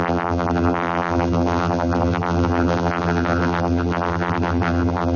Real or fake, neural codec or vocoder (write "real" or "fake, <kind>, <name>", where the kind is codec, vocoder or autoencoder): fake, vocoder, BigVGAN v2